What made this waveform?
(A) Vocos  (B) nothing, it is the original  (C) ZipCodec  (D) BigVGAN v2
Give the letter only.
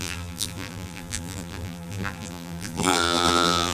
D